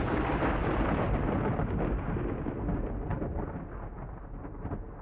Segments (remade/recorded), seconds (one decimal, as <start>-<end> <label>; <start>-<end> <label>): 0.0-5.0 recorded